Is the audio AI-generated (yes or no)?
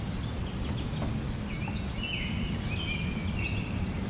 no